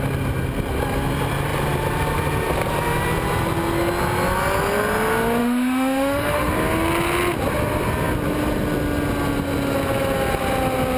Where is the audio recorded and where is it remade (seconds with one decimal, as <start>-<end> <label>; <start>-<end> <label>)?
0.0-5.4 recorded; 5.4-6.5 remade; 6.5-11.0 recorded